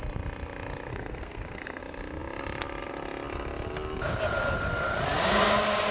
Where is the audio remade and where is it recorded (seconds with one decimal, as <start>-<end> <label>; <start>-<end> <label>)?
0.0-0.9 recorded; 0.9-1.8 remade; 1.8-5.9 recorded